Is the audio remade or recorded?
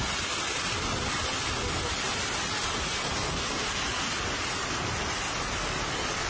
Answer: recorded